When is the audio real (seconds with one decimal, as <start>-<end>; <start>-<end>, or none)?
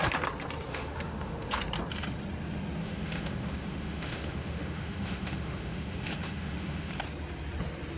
0.0-0.7; 1.6-2.8; 6.9-8.0